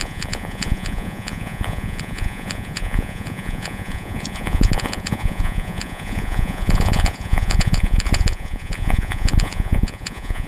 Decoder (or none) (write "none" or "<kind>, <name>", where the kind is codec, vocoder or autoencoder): vocoder, Vocos